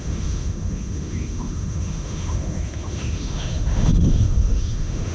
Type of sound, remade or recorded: remade